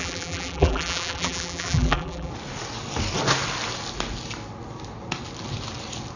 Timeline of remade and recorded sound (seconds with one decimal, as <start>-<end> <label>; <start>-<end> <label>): 0.0-2.3 remade; 2.3-6.2 recorded

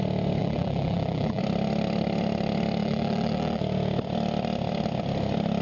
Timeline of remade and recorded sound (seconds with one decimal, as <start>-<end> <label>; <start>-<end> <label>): 0.0-0.4 recorded; 0.4-1.4 remade; 1.4-2.8 recorded; 2.8-3.6 remade; 3.6-5.6 recorded

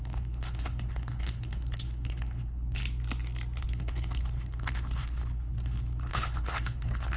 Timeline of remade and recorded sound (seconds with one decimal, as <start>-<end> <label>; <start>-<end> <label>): 0.0-2.8 remade; 2.8-3.6 recorded; 3.6-7.2 remade

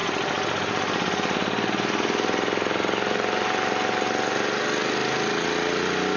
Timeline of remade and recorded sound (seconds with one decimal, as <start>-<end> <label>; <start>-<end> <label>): 0.0-6.2 recorded

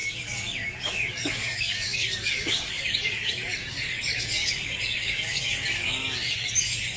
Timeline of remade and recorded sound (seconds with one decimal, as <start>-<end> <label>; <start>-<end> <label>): 0.0-7.0 remade

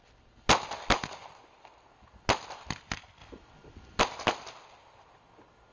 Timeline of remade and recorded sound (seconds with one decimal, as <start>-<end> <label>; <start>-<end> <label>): 0.0-5.7 recorded

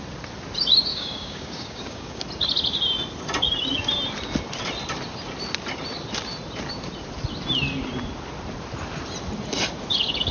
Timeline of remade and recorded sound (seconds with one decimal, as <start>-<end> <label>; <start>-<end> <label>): 0.0-0.9 recorded; 0.9-2.2 remade; 2.2-10.3 recorded

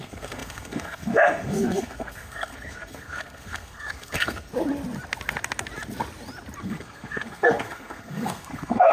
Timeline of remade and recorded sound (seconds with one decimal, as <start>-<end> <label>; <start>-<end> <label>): 0.0-4.5 remade; 4.5-6.6 recorded; 6.6-8.9 remade